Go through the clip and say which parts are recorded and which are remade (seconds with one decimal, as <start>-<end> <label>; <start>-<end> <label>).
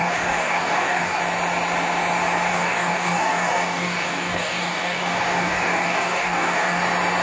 0.0-1.2 remade; 1.2-2.5 recorded; 2.5-6.8 remade; 6.8-7.2 recorded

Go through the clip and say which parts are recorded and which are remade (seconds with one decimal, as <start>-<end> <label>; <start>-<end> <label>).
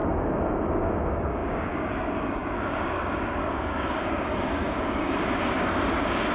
0.0-6.3 remade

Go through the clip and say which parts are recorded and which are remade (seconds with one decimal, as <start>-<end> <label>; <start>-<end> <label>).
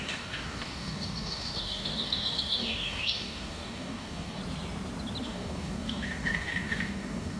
0.0-4.4 remade; 4.4-5.2 recorded; 5.2-7.4 remade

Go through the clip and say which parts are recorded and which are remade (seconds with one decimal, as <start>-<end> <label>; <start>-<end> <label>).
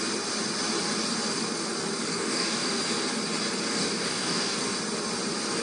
0.0-2.1 recorded; 2.1-2.8 remade; 2.8-3.7 recorded; 3.7-4.6 remade; 4.6-5.6 recorded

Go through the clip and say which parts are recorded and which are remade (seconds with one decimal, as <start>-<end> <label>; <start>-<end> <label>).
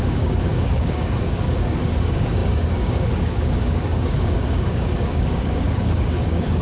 0.0-6.6 remade